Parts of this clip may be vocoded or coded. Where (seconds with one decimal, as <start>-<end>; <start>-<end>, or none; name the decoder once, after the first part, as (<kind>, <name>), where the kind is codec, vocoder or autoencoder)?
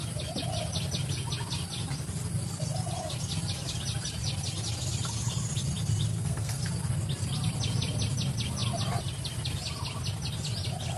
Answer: 6.1-6.6 (codec, SNAC)